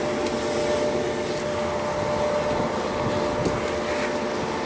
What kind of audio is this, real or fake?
real